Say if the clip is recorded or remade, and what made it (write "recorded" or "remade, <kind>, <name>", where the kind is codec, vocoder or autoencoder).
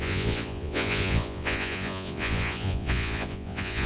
remade, vocoder, Vocos